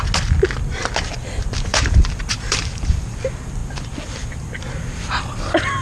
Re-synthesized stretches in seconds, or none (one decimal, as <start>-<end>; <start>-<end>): 1.7-3.2